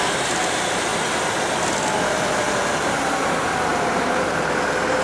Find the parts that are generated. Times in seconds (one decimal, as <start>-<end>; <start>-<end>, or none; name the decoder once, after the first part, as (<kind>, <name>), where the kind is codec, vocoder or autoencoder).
3.7-4.2 (vocoder, BigVGAN v2)

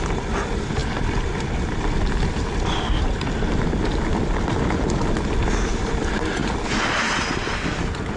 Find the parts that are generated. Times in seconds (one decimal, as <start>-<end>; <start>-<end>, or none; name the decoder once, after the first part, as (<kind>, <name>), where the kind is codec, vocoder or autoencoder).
none

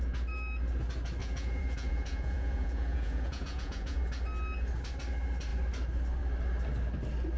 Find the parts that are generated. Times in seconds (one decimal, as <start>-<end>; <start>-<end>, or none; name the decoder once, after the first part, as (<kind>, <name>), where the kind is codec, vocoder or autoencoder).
1.2-4.0 (vocoder, Vocos)